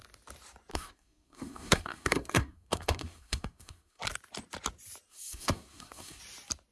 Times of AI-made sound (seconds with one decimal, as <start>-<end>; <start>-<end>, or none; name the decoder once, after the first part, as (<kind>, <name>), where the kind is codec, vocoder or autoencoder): 0.7-4.0 (codec, SNAC); 5.1-6.2